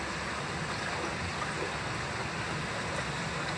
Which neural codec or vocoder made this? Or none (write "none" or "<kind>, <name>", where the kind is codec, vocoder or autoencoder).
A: none